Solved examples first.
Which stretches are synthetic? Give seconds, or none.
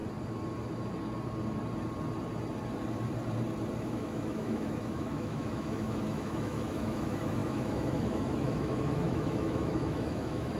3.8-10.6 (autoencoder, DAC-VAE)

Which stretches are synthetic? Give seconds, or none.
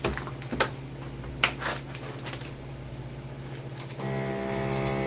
none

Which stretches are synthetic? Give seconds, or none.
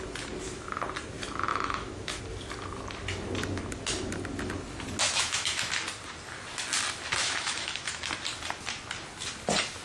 1.5-2.2 (autoencoder, DAC-VAE); 5.0-5.7; 7.2-8.0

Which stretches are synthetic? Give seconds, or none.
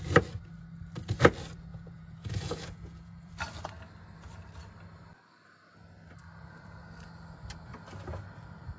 1.7-3.3 (vocoder, Vocos)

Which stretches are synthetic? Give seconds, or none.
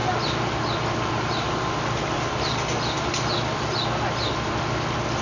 none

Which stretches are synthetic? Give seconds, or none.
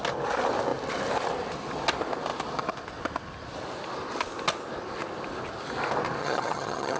6.2-7.0 (vocoder, HiFi-GAN)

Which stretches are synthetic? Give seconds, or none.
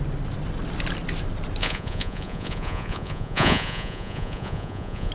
1.6-5.1 (vocoder, Vocos)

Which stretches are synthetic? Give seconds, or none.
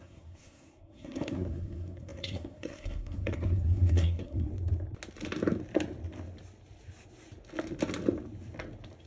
0.0-4.5 (codec, SNAC)